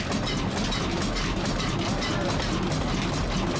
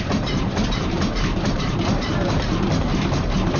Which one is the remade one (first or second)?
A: second